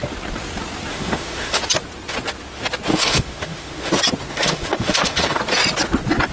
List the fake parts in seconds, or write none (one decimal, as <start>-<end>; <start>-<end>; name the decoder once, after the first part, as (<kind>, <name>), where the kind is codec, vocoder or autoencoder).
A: 0.9-1.6 (autoencoder, DAC-VAE); 2.9-3.9; 4.3-5.4